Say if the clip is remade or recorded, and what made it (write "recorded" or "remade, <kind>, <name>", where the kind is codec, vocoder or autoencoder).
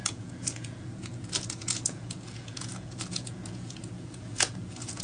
remade, vocoder, Vocos